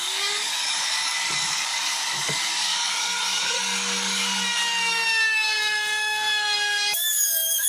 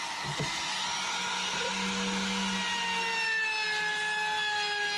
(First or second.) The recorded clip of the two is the second